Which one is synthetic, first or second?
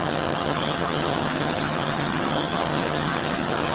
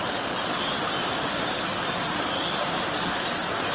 first